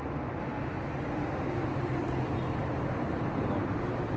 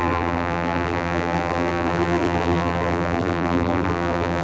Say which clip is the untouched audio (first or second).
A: first